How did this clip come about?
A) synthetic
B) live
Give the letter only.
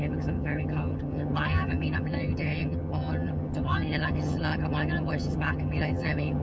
A